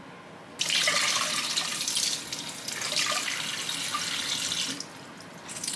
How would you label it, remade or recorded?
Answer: recorded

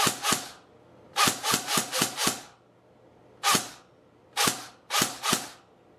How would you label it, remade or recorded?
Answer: recorded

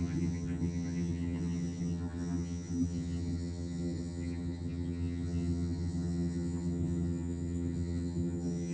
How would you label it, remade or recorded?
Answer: remade